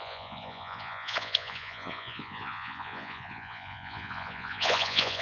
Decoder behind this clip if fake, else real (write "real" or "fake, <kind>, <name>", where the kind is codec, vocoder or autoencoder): fake, vocoder, Vocos